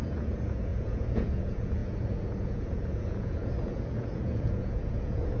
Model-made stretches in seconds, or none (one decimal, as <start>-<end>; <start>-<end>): 0.0-5.4

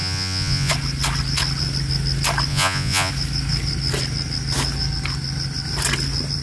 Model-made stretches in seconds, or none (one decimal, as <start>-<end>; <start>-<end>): 0.0-0.7; 2.5-3.1

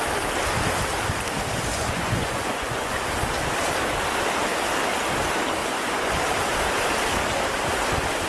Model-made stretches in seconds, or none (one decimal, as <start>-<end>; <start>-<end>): 1.7-3.0; 5.6-6.2

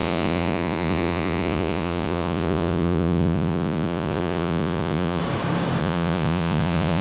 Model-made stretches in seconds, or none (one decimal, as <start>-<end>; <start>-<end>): 0.0-5.2; 5.8-7.0

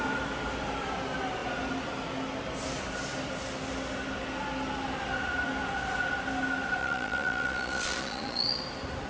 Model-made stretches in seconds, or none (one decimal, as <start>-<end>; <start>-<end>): 6.8-8.6

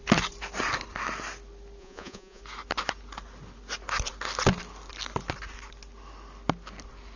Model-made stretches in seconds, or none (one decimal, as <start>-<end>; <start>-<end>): 1.8-2.4

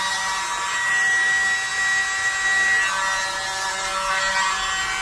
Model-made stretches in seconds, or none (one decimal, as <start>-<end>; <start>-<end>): none

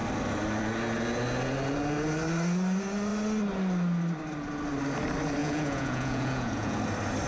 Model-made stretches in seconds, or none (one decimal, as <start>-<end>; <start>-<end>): 5.4-6.8